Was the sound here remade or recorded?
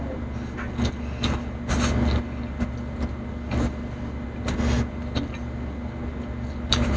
recorded